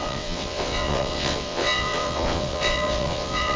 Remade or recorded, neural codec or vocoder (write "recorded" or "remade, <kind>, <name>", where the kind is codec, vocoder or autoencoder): remade, vocoder, WaveNeXt